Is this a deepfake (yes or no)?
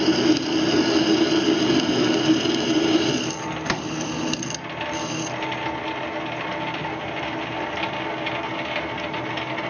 no